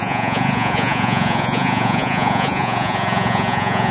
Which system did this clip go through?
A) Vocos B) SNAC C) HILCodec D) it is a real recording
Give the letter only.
A